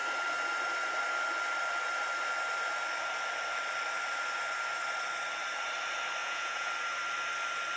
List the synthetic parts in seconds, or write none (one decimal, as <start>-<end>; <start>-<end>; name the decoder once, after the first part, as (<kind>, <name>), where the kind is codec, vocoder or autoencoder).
6.2-6.7 (vocoder, Vocos)